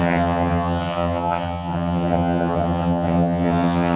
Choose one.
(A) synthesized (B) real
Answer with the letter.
A